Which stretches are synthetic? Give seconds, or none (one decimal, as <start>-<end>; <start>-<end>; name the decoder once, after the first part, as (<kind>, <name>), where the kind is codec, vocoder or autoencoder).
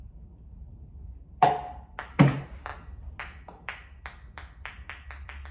0.0-5.5 (vocoder, BigVGAN v2)